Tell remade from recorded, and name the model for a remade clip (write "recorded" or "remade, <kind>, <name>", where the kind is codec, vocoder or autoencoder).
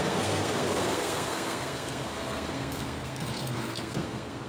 remade, codec, SNAC